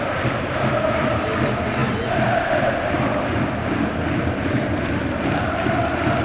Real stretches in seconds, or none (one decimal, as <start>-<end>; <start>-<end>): none